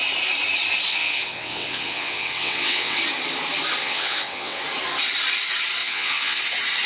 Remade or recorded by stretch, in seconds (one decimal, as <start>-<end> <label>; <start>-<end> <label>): 0.0-0.9 recorded; 0.9-3.0 remade; 3.0-3.8 recorded; 3.8-4.6 remade; 4.6-5.8 recorded; 5.8-6.4 remade; 6.4-6.9 recorded

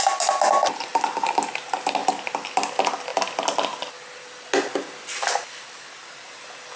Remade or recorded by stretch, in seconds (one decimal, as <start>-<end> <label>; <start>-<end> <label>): 0.0-6.8 recorded